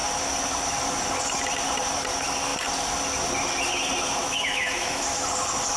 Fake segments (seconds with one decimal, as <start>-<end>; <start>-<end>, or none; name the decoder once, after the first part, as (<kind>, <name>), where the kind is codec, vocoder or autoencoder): 4.2-5.0 (autoencoder, DAC-VAE)

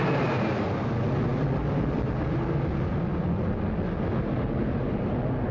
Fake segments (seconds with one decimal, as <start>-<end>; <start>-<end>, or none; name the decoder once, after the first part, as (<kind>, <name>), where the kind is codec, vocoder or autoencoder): none

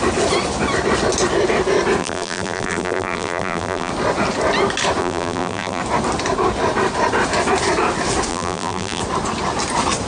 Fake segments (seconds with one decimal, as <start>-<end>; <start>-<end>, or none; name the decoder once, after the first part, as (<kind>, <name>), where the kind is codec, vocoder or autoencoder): 2.0-3.9 (vocoder, BigVGAN v2); 5.0-5.8; 8.3-9.0

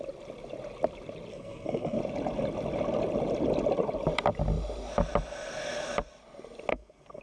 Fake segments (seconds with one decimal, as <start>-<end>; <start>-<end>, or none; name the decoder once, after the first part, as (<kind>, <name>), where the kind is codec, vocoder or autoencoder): 1.3-2.0 (codec, SNAC); 6.7-7.2

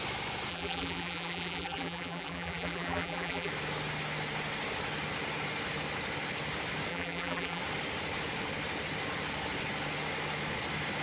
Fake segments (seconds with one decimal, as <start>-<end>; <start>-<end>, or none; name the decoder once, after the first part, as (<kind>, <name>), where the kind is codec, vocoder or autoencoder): 0.5-3.5 (vocoder, BigVGAN v2); 6.9-7.6

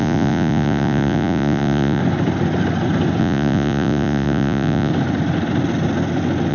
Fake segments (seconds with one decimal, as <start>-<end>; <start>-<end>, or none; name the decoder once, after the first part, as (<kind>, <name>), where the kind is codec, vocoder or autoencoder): 0.0-2.0 (vocoder, Vocos); 3.2-4.9